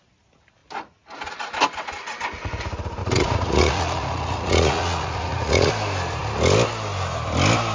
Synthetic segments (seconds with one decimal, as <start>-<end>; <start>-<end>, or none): 3.0-5.7